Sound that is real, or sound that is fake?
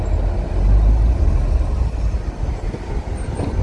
real